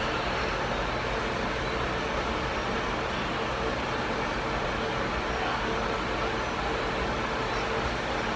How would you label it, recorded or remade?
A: recorded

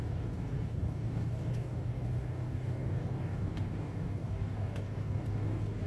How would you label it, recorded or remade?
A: remade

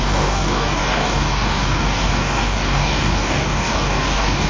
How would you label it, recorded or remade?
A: remade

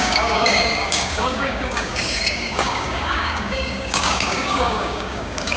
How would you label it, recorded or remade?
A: remade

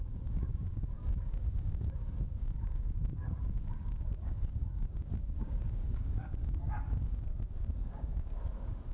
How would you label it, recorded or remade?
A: remade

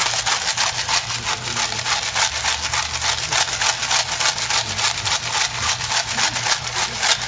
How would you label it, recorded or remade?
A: recorded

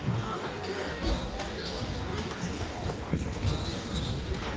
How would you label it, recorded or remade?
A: remade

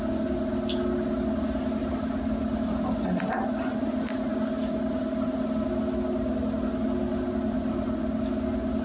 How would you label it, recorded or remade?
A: recorded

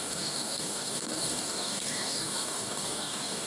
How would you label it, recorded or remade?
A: remade